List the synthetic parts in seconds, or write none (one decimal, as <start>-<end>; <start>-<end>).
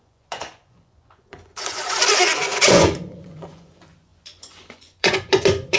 0.0-5.8